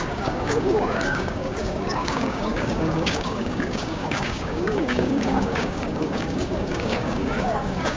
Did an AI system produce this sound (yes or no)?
yes